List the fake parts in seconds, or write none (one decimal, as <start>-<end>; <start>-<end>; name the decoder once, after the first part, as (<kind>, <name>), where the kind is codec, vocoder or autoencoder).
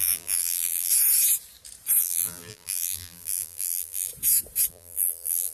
0.0-0.9 (vocoder, BigVGAN v2); 2.0-4.1; 4.7-5.5